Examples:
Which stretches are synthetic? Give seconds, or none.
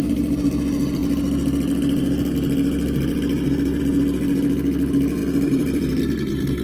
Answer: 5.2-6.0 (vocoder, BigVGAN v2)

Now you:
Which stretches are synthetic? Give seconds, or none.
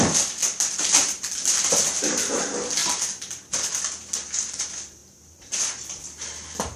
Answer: 0.0-2.8 (vocoder, BigVGAN v2); 3.7-6.8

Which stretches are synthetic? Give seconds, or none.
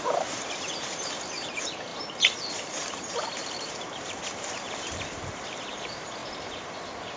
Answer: 0.0-6.2 (vocoder, BigVGAN v2)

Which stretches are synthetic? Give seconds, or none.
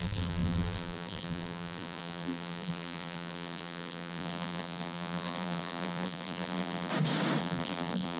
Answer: 0.0-6.9 (vocoder, BigVGAN v2); 7.4-8.2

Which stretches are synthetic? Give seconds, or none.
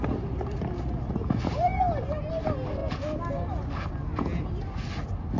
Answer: none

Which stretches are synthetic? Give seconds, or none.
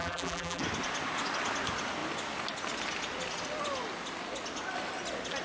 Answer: 0.0-0.6 (vocoder, BigVGAN v2)